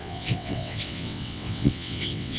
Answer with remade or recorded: remade